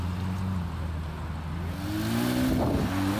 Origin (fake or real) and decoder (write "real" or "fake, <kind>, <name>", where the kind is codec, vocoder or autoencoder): real